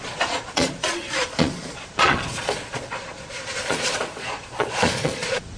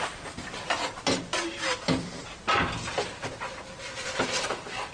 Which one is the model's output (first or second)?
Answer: first